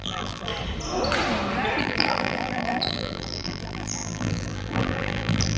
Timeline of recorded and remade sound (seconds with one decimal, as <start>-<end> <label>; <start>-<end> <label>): 0.0-0.5 remade; 0.5-1.8 recorded; 1.8-5.6 remade